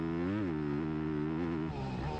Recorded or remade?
recorded